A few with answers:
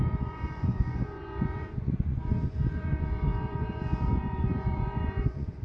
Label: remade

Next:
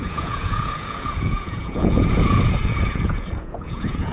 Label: remade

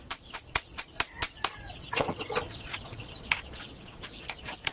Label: remade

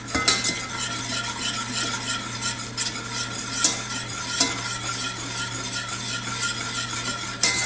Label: recorded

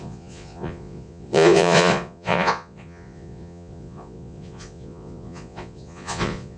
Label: remade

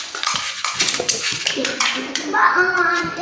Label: remade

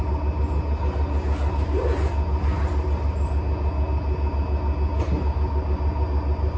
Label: recorded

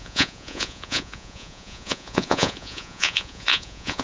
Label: remade